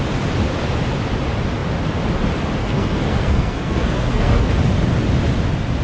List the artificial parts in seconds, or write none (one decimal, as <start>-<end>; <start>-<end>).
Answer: 2.6-4.5